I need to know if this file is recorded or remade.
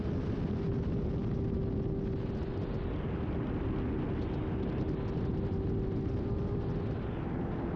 recorded